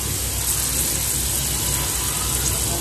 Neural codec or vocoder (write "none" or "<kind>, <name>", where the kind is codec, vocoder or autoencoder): none